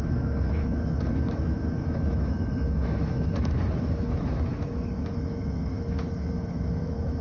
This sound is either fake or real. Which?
fake